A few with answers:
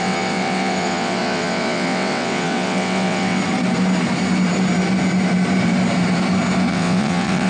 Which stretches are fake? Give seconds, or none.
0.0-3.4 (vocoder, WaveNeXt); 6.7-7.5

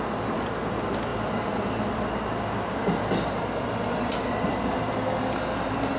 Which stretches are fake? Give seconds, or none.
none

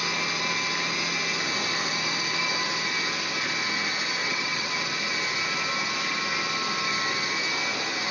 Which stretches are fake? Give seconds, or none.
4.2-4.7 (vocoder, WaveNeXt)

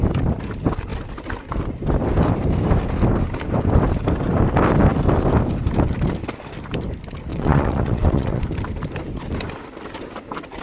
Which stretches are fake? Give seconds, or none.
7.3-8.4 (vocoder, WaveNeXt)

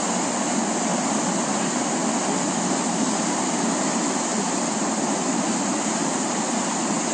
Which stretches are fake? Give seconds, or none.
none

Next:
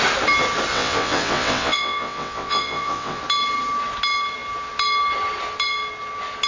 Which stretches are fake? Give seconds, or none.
0.7-3.2 (vocoder, WaveNeXt)

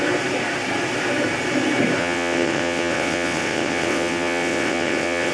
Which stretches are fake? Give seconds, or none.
2.0-5.3 (vocoder, WaveNeXt)